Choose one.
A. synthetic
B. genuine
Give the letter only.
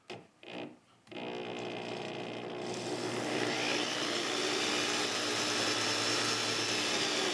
B